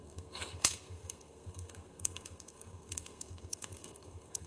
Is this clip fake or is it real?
fake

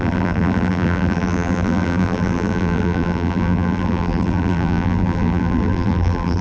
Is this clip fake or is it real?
fake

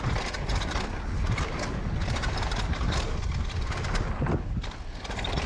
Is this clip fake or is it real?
real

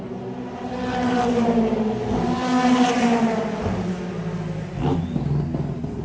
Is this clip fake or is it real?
real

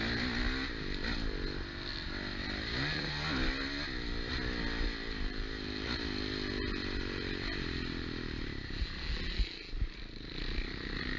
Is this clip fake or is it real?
real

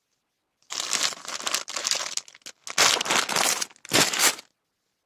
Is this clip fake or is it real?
real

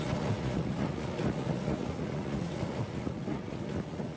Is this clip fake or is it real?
fake